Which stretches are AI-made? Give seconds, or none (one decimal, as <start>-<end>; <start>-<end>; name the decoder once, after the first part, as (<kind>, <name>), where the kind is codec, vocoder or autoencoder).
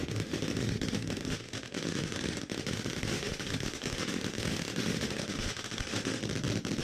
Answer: 0.0-6.2 (autoencoder, DAC-VAE)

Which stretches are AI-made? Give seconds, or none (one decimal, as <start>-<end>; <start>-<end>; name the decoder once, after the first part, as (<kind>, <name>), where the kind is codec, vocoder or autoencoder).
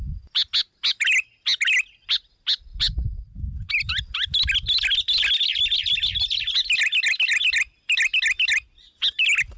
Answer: none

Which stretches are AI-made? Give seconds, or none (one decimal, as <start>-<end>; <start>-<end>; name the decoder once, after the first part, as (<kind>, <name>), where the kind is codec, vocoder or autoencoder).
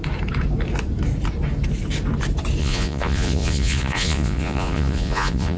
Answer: 2.6-5.6 (vocoder, Vocos)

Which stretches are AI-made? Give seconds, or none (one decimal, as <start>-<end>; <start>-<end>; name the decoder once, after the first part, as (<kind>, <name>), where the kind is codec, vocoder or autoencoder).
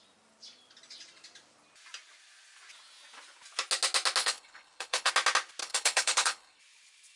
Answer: 4.2-5.1 (codec, HILCodec); 5.6-6.6